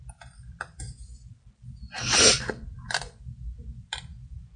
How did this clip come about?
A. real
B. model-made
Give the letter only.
A